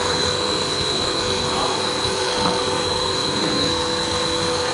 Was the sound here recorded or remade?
remade